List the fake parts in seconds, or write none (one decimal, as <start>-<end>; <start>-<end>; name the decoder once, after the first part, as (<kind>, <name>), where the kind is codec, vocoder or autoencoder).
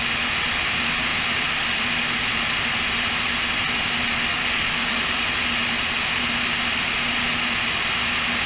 4.3-5.1 (codec, DAC)